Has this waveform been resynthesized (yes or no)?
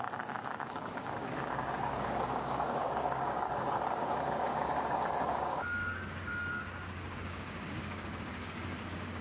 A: yes